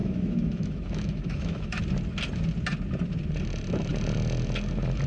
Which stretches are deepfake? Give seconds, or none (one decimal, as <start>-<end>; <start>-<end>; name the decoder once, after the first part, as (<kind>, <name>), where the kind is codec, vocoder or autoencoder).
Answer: 0.0-1.8 (autoencoder, DAC-VAE)